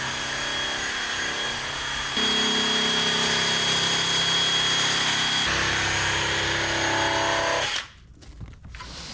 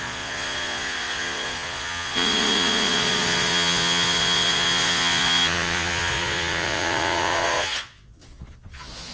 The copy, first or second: second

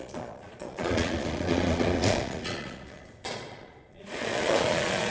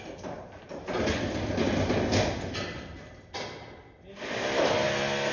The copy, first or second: first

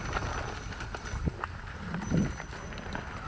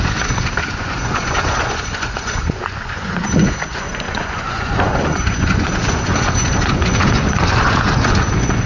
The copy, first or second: second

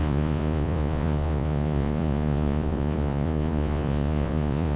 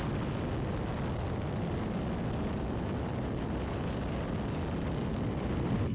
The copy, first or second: first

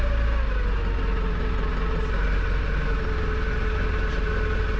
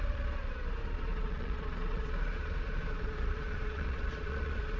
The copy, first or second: second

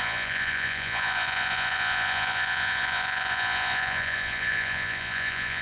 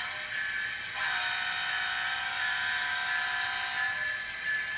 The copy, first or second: first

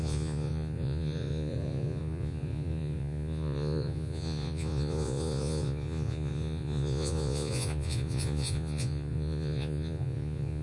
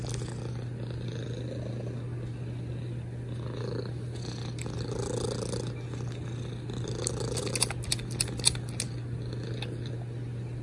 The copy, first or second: first